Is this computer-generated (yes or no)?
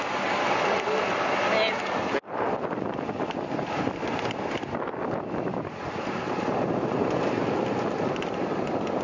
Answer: no